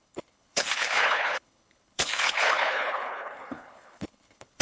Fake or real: fake